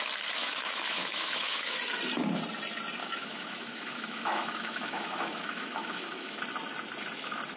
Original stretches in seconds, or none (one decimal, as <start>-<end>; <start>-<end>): 0.0-0.4; 1.8-3.0; 6.4-7.6